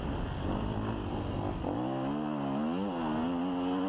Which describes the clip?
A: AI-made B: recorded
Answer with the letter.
B